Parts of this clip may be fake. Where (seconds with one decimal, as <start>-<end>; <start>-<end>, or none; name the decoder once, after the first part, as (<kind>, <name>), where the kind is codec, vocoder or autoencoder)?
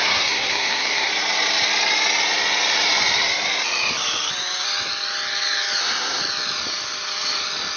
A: 0.0-1.1 (codec, SNAC); 5.8-6.2